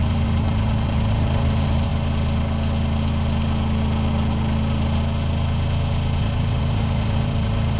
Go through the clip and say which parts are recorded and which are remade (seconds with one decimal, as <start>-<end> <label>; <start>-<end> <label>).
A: 0.0-1.9 remade; 1.9-6.2 recorded; 6.2-7.8 remade